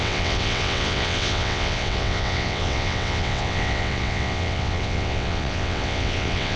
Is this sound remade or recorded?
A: remade